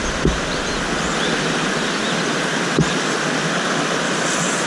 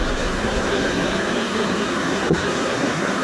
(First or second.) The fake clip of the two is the second